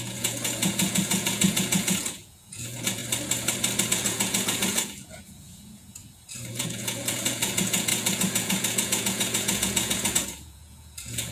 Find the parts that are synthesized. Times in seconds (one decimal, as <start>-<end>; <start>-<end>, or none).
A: 0.0-3.0; 3.9-6.0; 6.5-11.3